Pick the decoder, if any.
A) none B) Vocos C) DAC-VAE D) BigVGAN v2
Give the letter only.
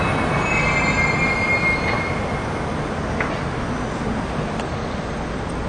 A